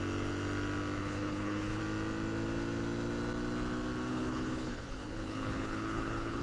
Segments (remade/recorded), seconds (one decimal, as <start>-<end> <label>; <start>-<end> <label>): 0.0-1.0 recorded; 1.0-1.8 remade; 1.8-4.1 recorded; 4.1-6.4 remade